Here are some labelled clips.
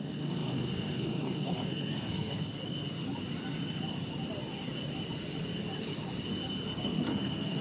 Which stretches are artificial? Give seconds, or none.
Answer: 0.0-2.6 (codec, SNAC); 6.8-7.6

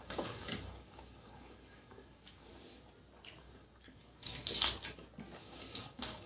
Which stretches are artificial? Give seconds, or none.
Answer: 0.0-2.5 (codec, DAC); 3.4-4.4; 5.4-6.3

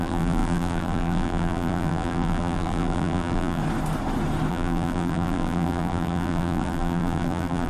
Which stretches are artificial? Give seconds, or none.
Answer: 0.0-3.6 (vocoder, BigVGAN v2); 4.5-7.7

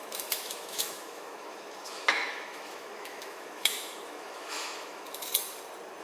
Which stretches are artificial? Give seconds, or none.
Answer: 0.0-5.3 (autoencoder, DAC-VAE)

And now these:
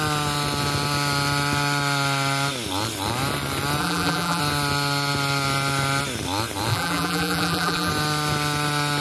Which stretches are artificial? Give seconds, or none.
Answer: 3.8-4.4 (vocoder, BigVGAN v2); 6.7-7.9

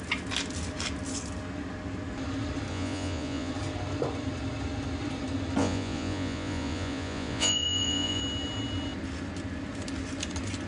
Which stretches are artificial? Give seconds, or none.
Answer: 2.7-3.5 (vocoder, Vocos); 5.6-8.2

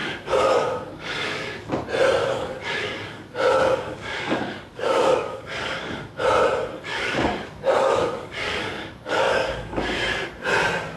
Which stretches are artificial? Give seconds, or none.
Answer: 0.0-1.6 (codec, DAC); 2.2-6.2; 6.9-10.1

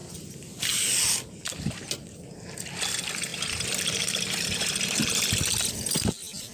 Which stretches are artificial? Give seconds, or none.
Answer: 3.3-5.0 (vocoder, BigVGAN v2)